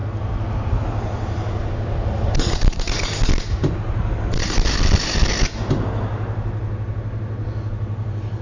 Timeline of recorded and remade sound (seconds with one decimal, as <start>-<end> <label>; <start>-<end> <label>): 0.0-8.4 recorded